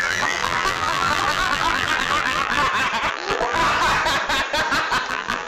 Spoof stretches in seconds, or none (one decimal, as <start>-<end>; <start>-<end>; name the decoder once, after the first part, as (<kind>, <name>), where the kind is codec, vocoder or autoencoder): 0.0-2.6 (vocoder, BigVGAN v2); 3.1-3.6; 5.1-5.5